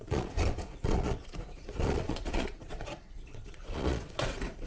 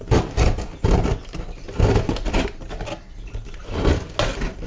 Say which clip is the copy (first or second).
first